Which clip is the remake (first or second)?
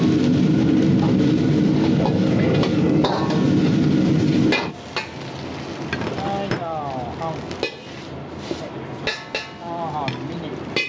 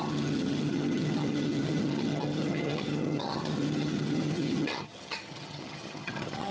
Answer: second